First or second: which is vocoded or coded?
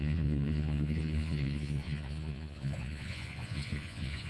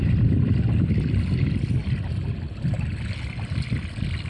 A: first